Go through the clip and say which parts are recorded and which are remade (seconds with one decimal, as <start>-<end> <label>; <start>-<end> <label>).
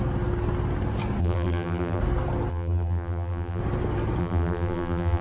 0.0-1.2 recorded; 1.2-2.0 remade; 2.0-2.5 recorded; 2.5-3.6 remade; 3.6-4.2 recorded; 4.2-5.2 remade